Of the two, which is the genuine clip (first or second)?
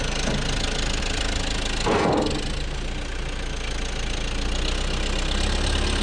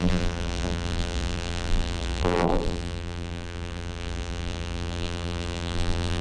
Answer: first